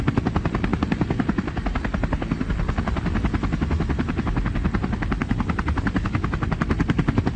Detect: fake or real real